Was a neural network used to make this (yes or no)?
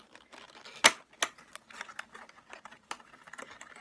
no